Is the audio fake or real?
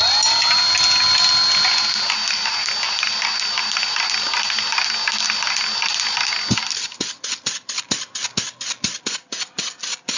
real